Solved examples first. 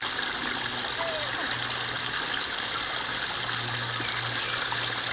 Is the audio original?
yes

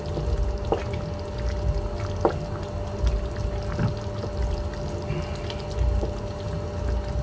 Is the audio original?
yes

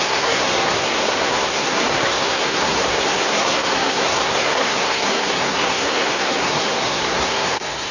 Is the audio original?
no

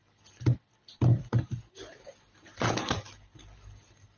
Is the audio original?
yes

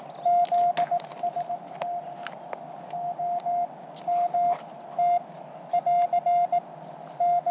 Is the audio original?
yes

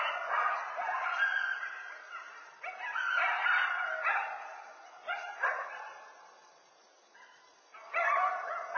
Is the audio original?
yes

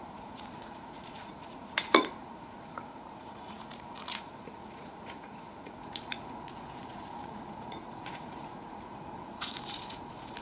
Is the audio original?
no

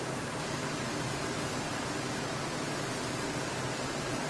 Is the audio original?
yes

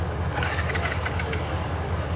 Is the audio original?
no